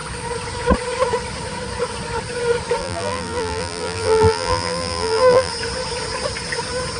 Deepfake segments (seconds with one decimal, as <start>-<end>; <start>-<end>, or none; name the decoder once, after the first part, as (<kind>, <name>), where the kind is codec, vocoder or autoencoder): 2.8-5.5 (vocoder, BigVGAN v2)